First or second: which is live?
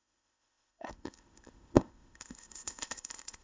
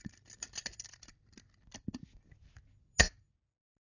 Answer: second